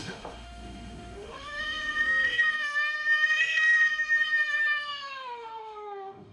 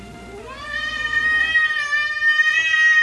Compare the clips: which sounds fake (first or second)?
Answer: first